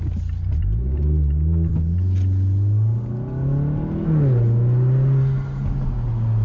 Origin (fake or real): real